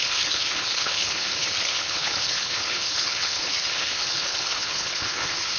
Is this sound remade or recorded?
remade